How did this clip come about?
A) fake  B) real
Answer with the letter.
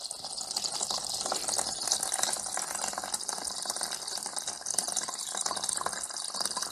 B